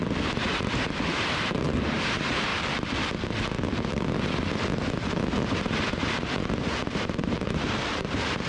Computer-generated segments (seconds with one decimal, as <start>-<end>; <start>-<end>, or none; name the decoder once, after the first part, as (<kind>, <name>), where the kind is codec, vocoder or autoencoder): 0.5-2.5 (vocoder, BigVGAN v2); 5.9-8.5